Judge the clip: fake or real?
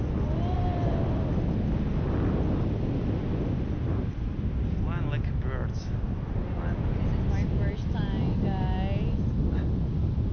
real